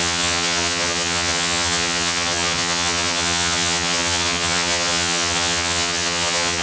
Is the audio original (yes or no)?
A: no